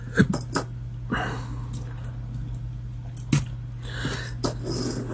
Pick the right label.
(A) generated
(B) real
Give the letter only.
B